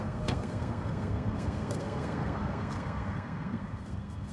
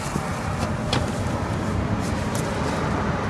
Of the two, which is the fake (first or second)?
first